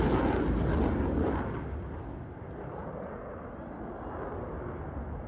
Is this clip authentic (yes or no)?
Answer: yes